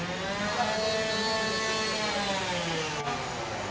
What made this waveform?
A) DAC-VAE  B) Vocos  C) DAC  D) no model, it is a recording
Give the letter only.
D